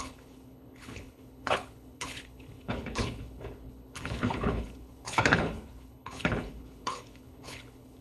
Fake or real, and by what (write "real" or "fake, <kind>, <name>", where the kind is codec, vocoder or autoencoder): fake, codec, HILCodec